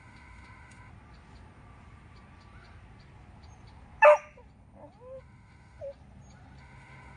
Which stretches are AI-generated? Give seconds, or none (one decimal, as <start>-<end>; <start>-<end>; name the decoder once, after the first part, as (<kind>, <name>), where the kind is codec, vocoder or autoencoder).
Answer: 0.0-0.9 (autoencoder, DAC-VAE); 5.2-5.8; 6.6-7.2